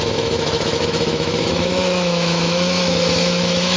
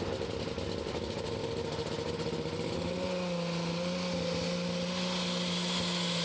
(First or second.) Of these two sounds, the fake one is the first